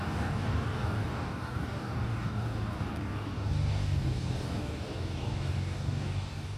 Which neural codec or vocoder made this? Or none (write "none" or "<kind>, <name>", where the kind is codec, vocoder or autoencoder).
codec, DAC